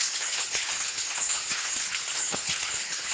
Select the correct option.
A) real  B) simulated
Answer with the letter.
B